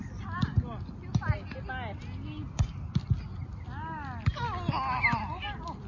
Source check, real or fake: real